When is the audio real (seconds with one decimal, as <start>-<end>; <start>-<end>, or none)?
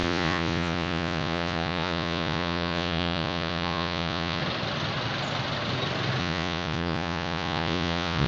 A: 4.4-6.2